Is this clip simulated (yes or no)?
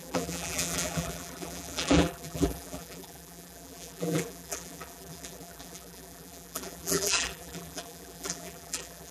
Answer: yes